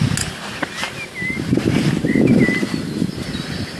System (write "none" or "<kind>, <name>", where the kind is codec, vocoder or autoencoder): none